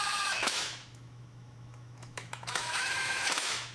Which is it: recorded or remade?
remade